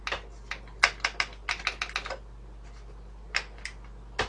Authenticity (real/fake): real